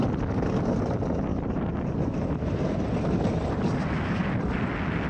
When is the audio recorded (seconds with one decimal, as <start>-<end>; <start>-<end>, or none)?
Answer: 0.0-1.3; 4.4-5.1